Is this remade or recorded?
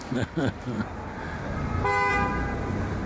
recorded